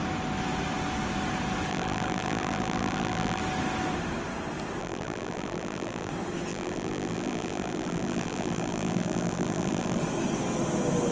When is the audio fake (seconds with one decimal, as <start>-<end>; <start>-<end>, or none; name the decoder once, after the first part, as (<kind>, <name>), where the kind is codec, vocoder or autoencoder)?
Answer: 1.7-3.4 (vocoder, BigVGAN v2); 4.8-6.1; 6.5-10.0

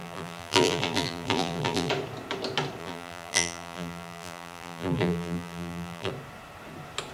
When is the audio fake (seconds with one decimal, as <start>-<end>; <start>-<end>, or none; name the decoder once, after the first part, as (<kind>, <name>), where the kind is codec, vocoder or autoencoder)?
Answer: 0.0-1.9 (vocoder, BigVGAN v2); 2.8-6.1

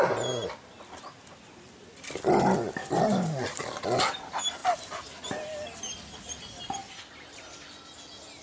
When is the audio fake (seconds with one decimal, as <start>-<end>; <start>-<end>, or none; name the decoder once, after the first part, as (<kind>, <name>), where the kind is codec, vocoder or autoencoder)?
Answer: none